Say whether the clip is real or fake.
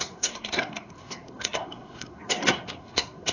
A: fake